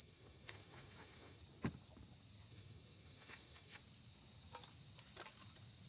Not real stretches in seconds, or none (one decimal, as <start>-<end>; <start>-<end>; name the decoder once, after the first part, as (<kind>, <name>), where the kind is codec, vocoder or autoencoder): 0.0-1.4 (autoencoder, DAC-VAE); 2.5-3.8